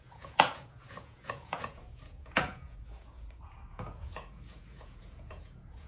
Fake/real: fake